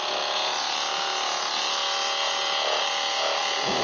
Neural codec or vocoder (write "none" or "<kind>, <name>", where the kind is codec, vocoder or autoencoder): vocoder, Vocos